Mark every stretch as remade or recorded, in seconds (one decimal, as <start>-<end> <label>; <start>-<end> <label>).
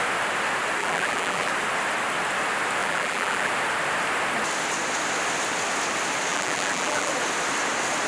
0.0-0.8 recorded; 0.8-1.5 remade; 1.5-2.8 recorded; 2.8-3.5 remade; 3.5-6.3 recorded; 6.3-7.1 remade; 7.1-8.1 recorded